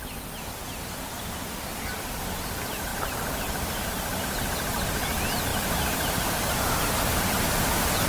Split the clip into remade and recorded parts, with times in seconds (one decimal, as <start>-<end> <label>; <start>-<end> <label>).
0.0-2.9 recorded; 2.9-4.2 remade; 4.2-5.5 recorded; 5.5-6.5 remade; 6.5-8.1 recorded

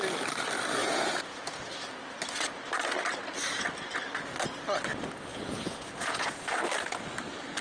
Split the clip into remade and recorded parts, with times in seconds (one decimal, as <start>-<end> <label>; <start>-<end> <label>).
0.0-0.8 recorded; 0.8-1.7 remade; 1.7-5.3 recorded; 5.3-6.6 remade; 6.6-7.6 recorded

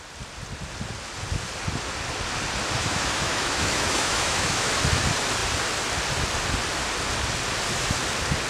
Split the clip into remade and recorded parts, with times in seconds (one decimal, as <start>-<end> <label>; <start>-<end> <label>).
0.0-2.8 recorded; 2.8-4.7 remade; 4.7-8.5 recorded

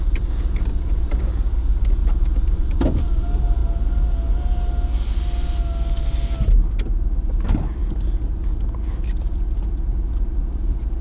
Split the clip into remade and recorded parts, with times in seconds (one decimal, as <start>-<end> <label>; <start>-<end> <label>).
0.0-0.7 recorded; 0.7-1.6 remade; 1.6-2.0 recorded; 2.0-3.1 remade; 3.1-11.0 recorded

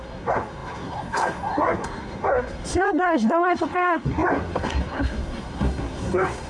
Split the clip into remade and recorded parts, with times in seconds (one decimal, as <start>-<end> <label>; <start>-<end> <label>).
0.0-6.5 remade

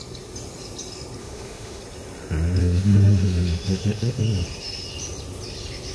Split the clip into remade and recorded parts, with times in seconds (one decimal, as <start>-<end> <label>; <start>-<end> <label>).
0.0-1.2 recorded; 1.2-1.8 remade; 1.8-2.6 recorded; 2.6-4.2 remade; 4.2-5.9 recorded